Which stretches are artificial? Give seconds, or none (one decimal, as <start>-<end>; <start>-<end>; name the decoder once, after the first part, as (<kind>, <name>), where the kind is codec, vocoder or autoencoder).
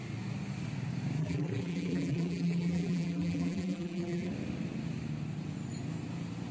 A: 1.2-4.3 (vocoder, BigVGAN v2)